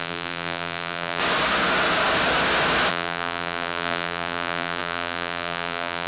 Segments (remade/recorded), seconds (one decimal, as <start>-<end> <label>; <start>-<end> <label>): 0.0-1.2 remade; 1.2-2.9 recorded; 2.9-6.1 remade